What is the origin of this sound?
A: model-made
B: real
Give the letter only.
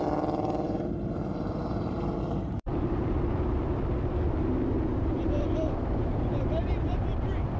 A